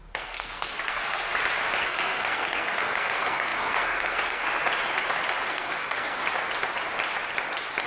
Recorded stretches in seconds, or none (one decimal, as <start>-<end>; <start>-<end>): 1.3-1.8; 4.4-5.5; 6.2-7.9